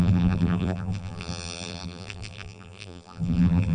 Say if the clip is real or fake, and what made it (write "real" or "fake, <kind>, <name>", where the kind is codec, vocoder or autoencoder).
fake, vocoder, BigVGAN v2